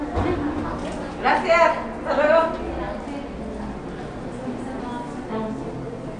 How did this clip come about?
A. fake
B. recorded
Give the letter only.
B